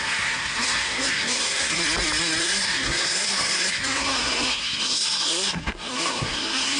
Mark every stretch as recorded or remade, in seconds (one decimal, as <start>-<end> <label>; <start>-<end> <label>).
0.0-1.8 remade; 1.8-2.4 recorded; 2.4-6.8 remade